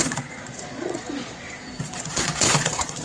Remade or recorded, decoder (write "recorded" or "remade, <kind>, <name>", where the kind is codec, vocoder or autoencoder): remade, vocoder, Vocos